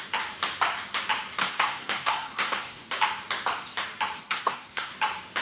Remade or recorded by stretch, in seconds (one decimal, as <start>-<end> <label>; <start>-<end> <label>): 0.0-1.4 recorded; 1.4-2.9 remade; 2.9-4.2 recorded; 4.2-4.9 remade; 4.9-5.4 recorded